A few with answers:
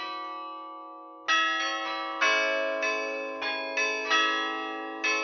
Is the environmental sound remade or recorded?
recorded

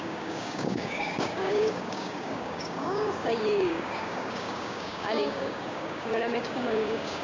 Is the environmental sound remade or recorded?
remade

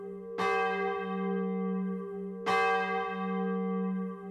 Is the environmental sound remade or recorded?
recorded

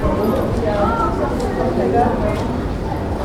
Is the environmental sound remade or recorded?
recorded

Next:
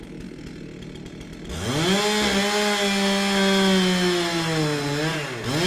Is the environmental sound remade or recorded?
recorded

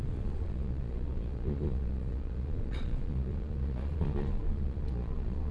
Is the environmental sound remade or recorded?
remade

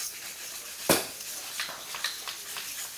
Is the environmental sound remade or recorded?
recorded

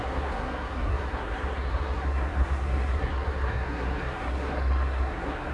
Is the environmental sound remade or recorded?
remade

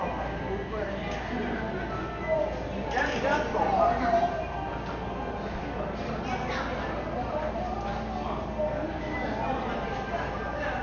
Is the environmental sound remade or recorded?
recorded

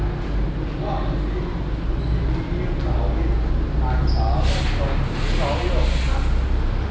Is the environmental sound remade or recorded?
recorded